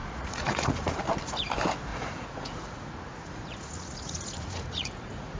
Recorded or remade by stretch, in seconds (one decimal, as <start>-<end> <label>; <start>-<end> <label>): 0.0-1.0 remade; 1.0-1.9 recorded; 1.9-5.4 remade